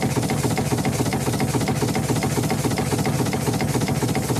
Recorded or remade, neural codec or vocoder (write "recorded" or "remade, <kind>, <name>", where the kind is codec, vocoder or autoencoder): recorded